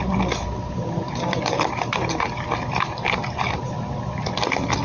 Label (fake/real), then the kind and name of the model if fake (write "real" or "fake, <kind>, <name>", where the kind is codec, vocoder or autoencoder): fake, vocoder, BigVGAN v2